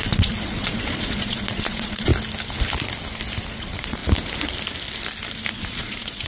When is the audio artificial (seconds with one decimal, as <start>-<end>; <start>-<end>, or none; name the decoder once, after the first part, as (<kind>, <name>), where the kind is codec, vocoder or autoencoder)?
0.0-2.1 (vocoder, Vocos); 3.5-4.0; 5.5-6.3